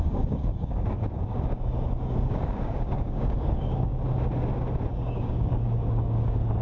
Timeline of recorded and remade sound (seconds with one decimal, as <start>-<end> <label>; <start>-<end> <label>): 0.0-3.9 remade; 3.9-4.9 recorded; 4.9-6.6 remade